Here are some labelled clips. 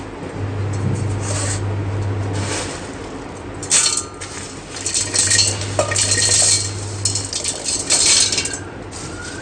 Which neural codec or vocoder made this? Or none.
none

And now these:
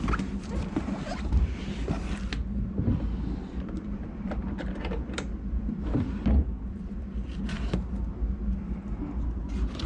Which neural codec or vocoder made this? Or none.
vocoder, BigVGAN v2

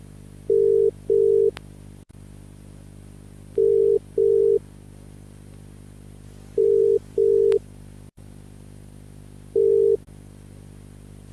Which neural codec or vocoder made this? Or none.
vocoder, BigVGAN v2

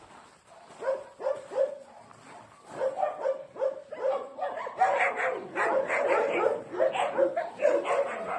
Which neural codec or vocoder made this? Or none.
none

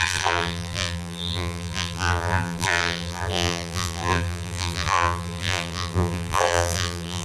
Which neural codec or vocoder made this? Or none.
vocoder, BigVGAN v2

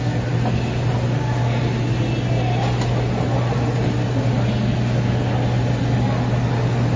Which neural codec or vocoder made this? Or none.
none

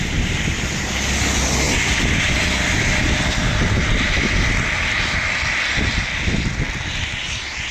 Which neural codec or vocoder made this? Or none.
none